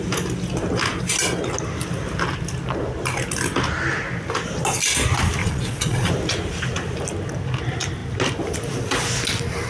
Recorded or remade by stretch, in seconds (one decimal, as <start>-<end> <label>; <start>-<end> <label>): 0.0-5.4 recorded; 5.4-6.1 remade; 6.1-9.7 recorded